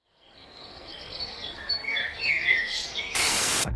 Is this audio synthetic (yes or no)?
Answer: yes